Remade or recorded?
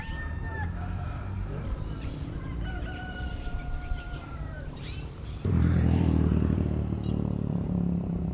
remade